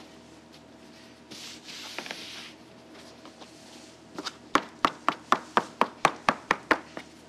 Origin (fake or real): real